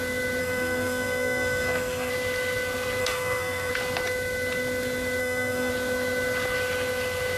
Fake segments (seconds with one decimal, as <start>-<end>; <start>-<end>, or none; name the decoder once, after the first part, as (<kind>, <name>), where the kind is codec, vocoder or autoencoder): 0.4-2.1 (codec, SNAC); 3.0-3.7; 5.2-5.7